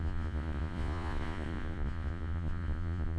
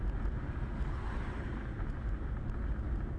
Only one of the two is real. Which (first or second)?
second